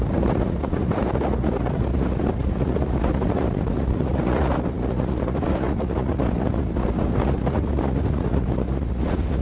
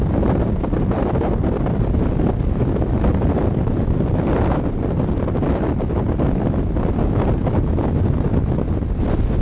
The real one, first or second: second